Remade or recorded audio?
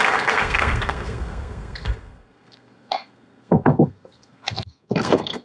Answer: remade